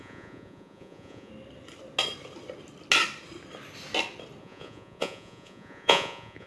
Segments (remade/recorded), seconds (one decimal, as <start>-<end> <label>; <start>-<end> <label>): 0.0-1.3 remade; 1.3-4.4 recorded; 4.4-6.5 remade